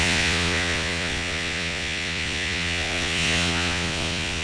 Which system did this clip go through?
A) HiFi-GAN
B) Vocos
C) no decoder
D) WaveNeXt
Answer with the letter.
B